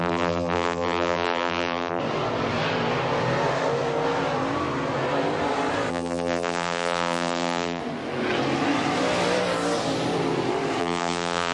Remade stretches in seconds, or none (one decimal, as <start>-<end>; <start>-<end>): 0.0-2.0; 5.9-7.8; 10.8-11.5